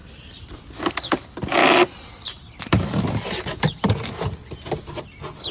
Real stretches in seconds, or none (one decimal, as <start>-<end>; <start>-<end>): 0.0-5.5